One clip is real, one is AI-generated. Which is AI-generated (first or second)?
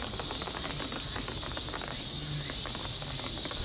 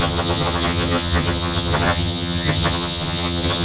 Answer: second